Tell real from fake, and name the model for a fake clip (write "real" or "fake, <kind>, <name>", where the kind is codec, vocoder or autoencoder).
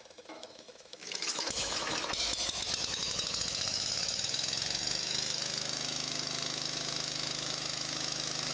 fake, autoencoder, DAC-VAE